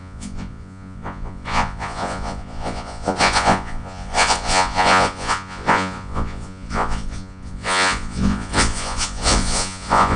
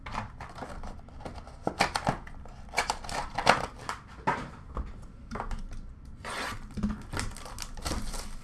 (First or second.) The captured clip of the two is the second